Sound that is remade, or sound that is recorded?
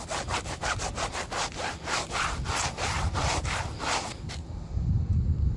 recorded